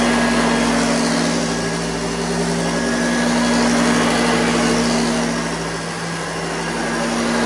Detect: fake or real real